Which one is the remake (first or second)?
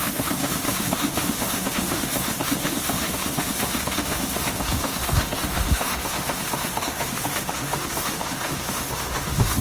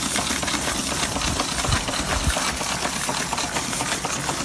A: first